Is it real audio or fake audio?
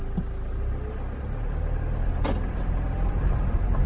real